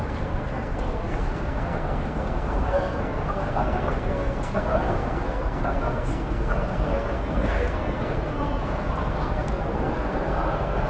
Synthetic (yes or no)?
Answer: yes